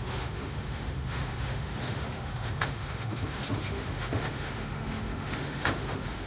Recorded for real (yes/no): no